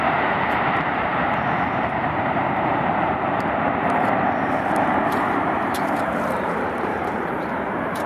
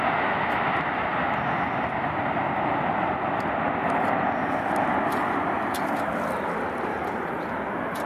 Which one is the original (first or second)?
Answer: second